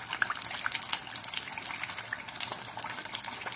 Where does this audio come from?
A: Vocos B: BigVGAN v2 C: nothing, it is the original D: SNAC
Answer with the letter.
C